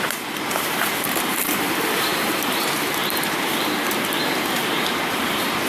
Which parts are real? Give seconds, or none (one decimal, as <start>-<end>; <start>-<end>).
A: none